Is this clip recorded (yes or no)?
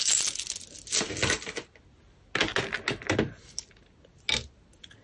yes